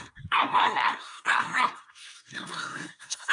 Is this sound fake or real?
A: fake